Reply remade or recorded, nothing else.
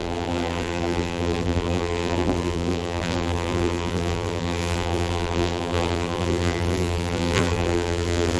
remade